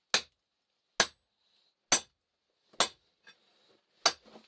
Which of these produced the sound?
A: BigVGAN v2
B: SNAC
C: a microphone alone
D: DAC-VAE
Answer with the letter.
C